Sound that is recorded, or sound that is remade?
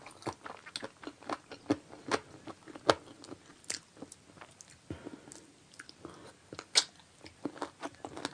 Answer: recorded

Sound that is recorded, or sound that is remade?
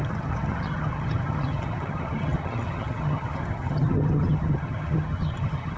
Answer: remade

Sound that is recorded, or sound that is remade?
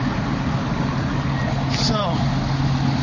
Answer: recorded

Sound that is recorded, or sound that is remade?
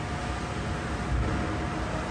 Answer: recorded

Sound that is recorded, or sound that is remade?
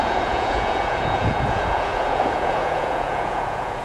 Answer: remade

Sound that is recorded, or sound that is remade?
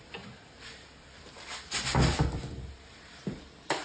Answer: recorded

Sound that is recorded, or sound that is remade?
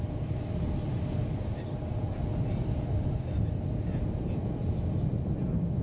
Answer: recorded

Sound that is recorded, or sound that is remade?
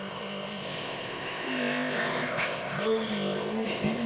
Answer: remade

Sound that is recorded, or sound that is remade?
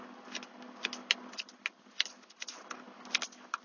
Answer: recorded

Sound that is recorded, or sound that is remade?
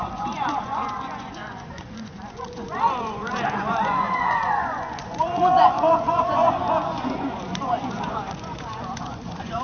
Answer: remade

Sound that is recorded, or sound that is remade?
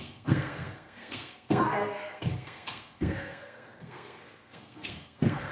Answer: remade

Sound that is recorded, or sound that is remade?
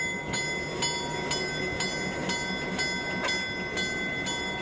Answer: recorded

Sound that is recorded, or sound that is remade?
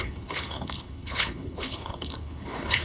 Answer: remade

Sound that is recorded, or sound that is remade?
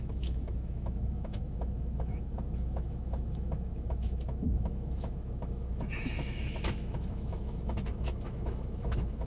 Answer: remade